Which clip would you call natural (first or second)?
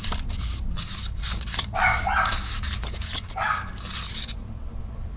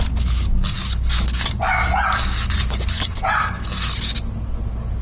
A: second